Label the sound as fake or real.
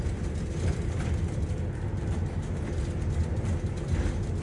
real